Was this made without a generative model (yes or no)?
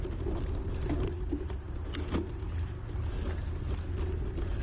yes